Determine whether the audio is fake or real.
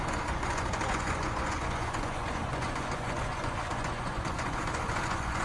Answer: fake